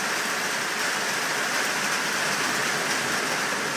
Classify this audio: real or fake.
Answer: real